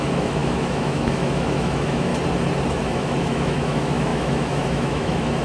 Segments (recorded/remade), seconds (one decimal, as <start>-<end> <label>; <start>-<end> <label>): 0.0-2.1 remade; 2.1-2.7 recorded; 2.7-5.4 remade